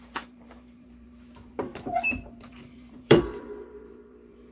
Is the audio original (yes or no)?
no